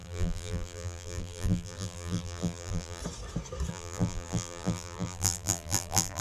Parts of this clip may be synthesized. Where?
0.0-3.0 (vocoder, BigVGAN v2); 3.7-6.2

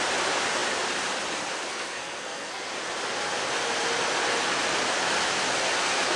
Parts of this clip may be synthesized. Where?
1.7-2.7 (codec, SNAC)